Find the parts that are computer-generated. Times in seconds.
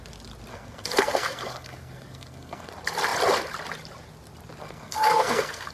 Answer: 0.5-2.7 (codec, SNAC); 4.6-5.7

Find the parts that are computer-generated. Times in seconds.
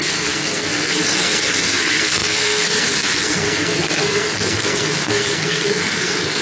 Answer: 0.0-6.4 (codec, SNAC)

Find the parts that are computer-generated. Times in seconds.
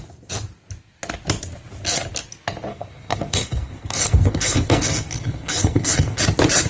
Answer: 2.7-6.2 (codec, SNAC)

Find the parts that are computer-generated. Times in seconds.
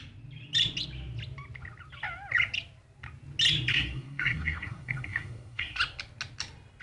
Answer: 3.7-5.8 (codec, SNAC)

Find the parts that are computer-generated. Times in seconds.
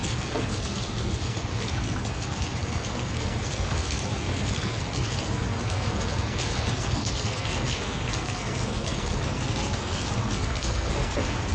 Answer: 0.0-11.5 (codec, SNAC)